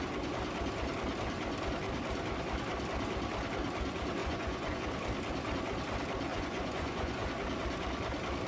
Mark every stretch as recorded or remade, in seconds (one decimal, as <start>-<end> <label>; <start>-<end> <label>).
0.0-4.2 recorded; 4.2-4.8 remade; 4.8-6.3 recorded; 6.3-7.3 remade; 7.3-8.5 recorded